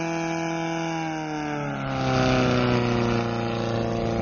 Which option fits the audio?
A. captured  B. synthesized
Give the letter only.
A